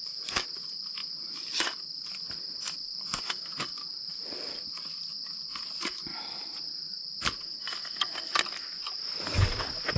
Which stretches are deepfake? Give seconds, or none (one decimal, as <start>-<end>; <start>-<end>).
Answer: none